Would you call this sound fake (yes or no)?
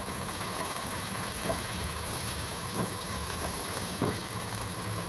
yes